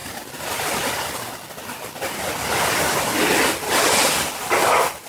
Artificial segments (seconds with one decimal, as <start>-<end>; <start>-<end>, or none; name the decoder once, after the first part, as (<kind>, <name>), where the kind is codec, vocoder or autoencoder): none